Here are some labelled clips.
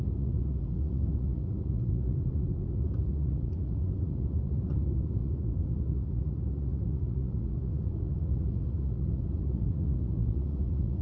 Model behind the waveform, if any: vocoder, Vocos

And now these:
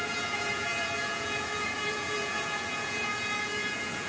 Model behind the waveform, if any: vocoder, Vocos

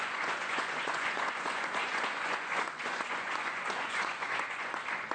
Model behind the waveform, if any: vocoder, Vocos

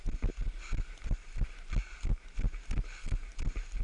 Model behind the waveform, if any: none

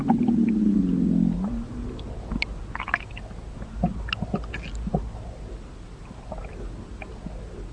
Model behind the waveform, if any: none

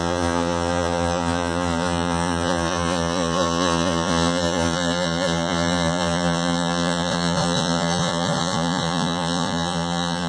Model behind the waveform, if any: vocoder, Vocos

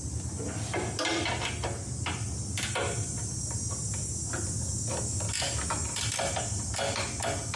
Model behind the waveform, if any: none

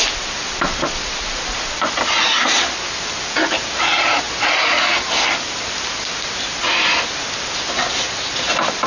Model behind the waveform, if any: none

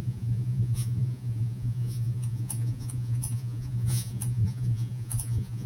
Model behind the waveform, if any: vocoder, Vocos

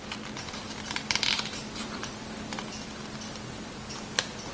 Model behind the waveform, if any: none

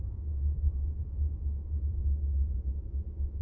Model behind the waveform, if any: vocoder, Vocos